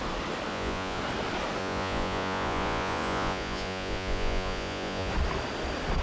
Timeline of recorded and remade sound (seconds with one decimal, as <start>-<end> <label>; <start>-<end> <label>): 0.0-0.5 recorded; 0.5-1.0 remade; 1.0-1.6 recorded; 1.6-5.1 remade; 5.1-6.0 recorded